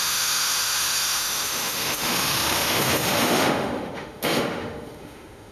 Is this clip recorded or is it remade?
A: remade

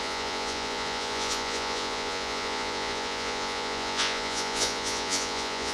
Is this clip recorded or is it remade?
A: remade